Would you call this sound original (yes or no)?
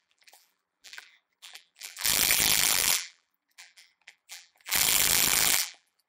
no